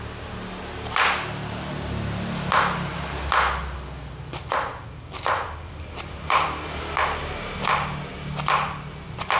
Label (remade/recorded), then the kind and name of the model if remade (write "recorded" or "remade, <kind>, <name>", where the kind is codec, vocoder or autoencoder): recorded